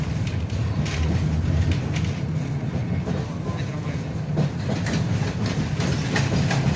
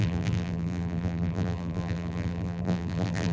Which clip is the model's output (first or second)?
second